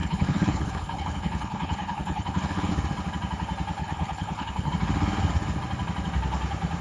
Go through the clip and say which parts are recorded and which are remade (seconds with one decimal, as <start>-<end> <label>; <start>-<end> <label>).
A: 0.0-2.7 remade; 2.7-3.8 recorded; 3.8-4.7 remade; 4.7-6.8 recorded